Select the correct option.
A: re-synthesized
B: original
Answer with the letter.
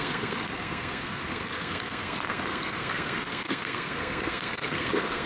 A